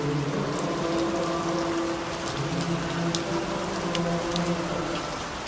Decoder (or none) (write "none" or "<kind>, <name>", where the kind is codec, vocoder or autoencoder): none